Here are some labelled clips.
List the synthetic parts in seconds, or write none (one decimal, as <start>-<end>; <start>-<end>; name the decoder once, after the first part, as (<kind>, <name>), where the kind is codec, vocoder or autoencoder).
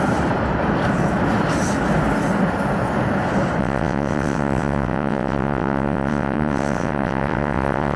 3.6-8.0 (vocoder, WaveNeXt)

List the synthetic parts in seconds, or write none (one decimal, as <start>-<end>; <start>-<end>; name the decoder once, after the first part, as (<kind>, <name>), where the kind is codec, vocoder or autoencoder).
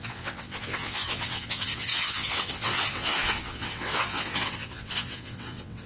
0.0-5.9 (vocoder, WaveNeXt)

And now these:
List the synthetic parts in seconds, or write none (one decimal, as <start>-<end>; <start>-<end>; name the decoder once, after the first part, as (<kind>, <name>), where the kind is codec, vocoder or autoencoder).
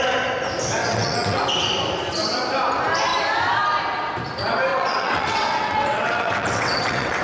0.8-1.4 (vocoder, WaveNeXt); 4.7-7.2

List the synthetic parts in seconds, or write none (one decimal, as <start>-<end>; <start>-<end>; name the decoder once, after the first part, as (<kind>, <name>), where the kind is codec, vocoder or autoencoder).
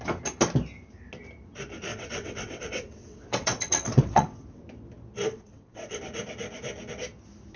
1.9-4.6 (vocoder, WaveNeXt); 5.3-6.0